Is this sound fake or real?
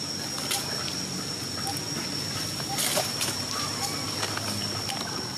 real